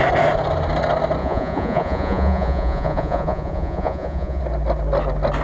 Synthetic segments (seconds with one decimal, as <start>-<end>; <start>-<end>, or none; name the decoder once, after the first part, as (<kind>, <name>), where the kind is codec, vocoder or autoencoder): 1.2-4.4 (vocoder, Vocos)